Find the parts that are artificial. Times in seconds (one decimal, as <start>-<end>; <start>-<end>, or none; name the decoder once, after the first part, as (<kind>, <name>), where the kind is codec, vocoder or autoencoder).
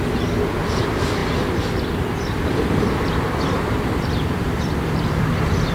none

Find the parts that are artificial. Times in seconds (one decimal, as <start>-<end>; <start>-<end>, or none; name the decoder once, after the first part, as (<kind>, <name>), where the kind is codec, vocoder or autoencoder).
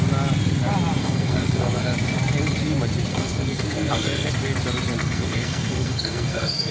1.0-1.9 (codec, SNAC); 3.1-4.3; 5.0-6.7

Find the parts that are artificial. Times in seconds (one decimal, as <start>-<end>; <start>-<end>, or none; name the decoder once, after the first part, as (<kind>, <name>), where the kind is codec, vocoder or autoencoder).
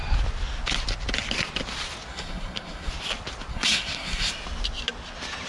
2.1-2.9 (codec, SNAC); 3.5-4.3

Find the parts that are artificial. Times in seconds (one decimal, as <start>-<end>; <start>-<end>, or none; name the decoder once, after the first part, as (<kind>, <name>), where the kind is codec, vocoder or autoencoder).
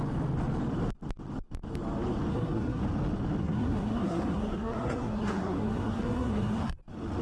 2.3-2.8 (codec, SNAC); 3.4-6.8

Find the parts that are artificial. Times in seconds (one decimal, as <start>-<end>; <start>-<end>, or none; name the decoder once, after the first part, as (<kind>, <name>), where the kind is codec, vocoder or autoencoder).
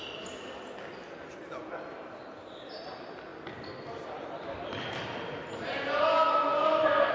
6.1-7.1 (codec, SNAC)